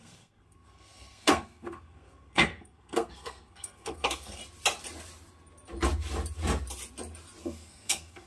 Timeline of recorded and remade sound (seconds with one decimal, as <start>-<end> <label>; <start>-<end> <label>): 0.0-4.4 remade; 4.4-7.4 recorded; 7.4-8.3 remade